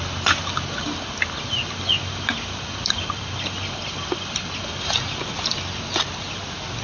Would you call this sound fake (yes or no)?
no